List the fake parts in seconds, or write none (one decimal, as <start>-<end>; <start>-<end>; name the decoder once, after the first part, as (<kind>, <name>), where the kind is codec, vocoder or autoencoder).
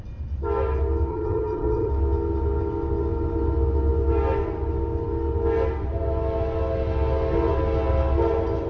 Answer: 1.1-1.9 (vocoder, HiFi-GAN)